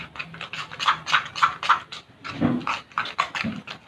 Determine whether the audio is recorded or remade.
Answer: recorded